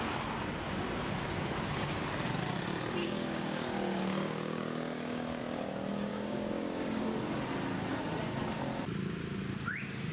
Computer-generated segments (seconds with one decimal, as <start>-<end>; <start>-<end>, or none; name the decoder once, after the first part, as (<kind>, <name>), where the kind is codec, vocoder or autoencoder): 3.0-5.4 (codec, DAC); 6.1-7.0

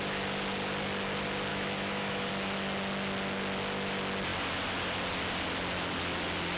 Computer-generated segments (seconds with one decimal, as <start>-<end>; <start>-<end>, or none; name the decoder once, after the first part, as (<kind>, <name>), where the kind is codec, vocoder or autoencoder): 1.5-2.3 (autoencoder, DAC-VAE)